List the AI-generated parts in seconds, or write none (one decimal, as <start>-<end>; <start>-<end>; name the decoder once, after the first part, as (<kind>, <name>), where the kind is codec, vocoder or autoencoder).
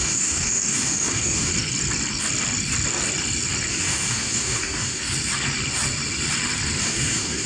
0.0-1.5 (codec, DAC); 3.7-5.0; 6.8-7.5